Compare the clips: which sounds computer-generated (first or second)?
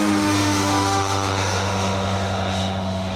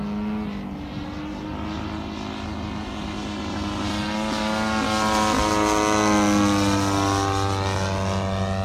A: first